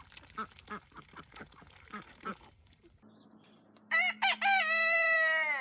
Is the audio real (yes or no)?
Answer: yes